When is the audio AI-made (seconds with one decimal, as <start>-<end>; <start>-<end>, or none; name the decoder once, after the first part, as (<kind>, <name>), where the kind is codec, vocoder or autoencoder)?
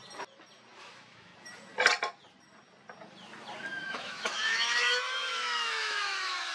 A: 0.8-1.3 (autoencoder, DAC-VAE); 3.8-6.5